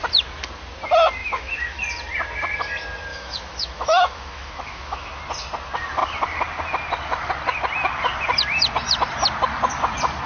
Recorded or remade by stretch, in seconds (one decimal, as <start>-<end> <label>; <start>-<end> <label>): 0.0-1.2 recorded; 1.2-1.8 remade; 1.8-3.1 recorded; 3.1-5.1 remade; 5.1-10.3 recorded